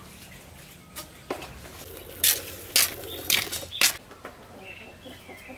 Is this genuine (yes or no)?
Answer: yes